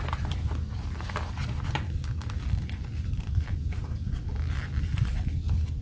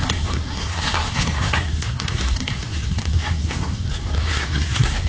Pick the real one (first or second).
first